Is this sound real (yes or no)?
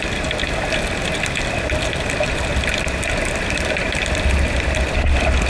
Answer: yes